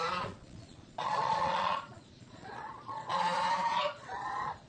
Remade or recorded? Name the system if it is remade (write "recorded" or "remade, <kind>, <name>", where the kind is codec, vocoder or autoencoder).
remade, vocoder, Vocos